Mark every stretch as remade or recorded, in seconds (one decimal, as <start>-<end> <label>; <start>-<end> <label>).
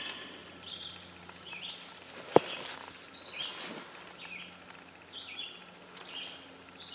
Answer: 0.0-0.4 recorded; 0.4-1.7 remade; 1.7-6.9 recorded